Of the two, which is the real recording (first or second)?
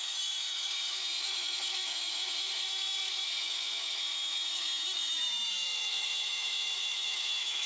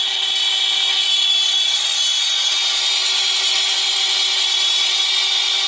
second